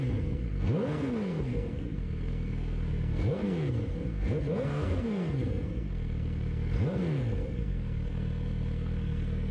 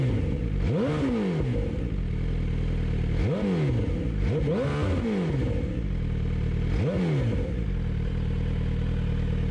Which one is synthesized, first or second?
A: first